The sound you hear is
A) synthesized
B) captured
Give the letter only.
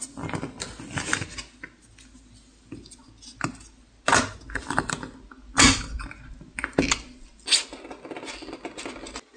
B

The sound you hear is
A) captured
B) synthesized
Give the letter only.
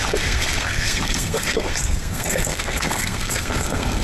B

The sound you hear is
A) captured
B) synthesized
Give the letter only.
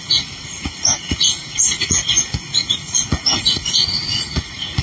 B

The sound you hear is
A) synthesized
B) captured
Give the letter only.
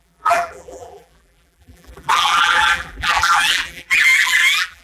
A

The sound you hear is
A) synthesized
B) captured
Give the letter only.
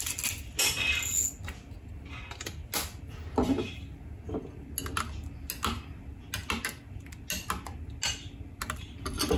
B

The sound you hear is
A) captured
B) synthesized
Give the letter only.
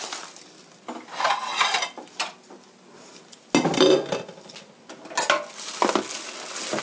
A